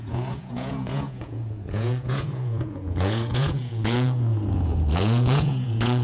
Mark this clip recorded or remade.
remade